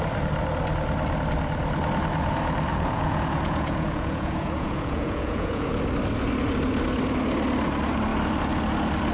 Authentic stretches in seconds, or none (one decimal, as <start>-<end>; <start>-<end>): 0.0-2.7; 5.7-9.1